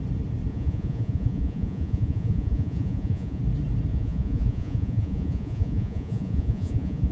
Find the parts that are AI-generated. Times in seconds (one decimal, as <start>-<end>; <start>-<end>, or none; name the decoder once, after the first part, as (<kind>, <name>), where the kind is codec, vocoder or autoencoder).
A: 0.5-3.4 (vocoder, Vocos); 3.9-7.1